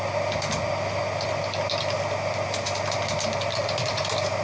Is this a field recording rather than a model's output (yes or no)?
yes